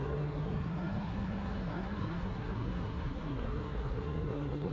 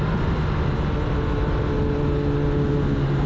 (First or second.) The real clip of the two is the second